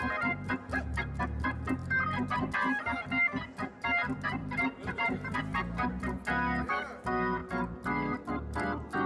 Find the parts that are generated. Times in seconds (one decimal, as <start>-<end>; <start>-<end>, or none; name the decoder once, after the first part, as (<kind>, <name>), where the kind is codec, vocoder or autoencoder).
4.4-5.4 (vocoder, BigVGAN v2)